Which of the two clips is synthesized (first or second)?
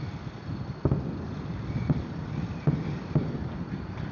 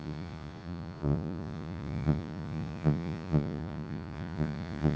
second